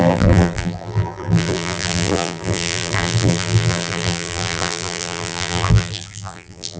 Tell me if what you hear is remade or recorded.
remade